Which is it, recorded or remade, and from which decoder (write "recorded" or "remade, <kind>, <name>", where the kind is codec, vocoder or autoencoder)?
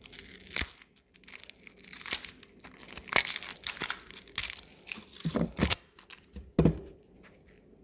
recorded